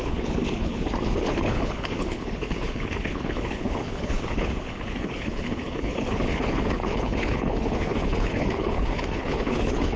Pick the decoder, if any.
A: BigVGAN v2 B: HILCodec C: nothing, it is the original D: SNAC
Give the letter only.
B